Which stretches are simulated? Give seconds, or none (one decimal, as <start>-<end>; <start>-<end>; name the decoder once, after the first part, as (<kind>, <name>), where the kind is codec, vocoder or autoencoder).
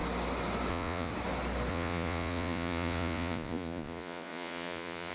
0.7-1.1 (vocoder, Vocos); 1.7-5.1